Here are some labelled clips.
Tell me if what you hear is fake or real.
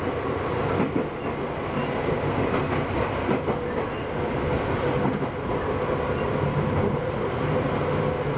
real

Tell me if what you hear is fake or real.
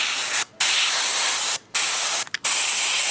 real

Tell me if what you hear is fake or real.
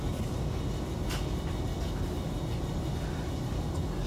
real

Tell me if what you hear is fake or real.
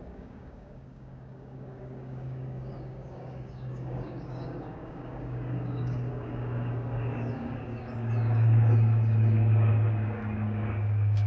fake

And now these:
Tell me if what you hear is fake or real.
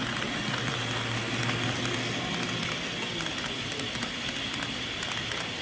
real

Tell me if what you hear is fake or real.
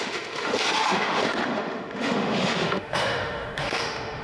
fake